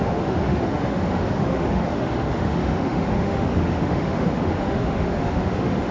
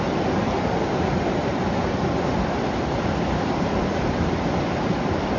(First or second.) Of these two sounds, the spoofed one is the first